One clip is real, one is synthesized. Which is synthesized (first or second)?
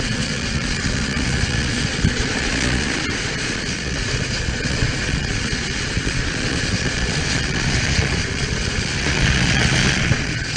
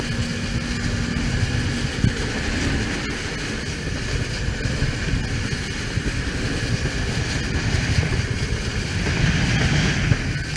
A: first